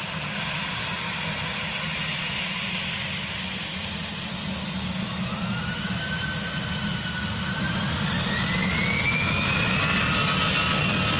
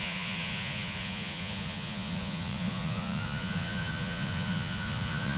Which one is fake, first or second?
second